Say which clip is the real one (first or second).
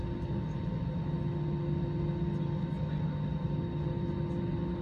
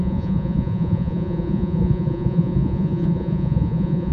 first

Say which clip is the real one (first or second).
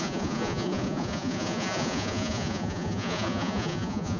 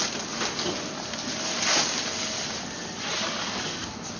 second